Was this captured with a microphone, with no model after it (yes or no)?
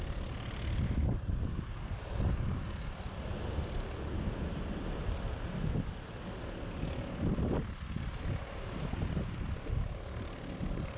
yes